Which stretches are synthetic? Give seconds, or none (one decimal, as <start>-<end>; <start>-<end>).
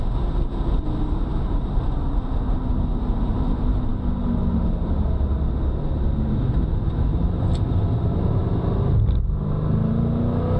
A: none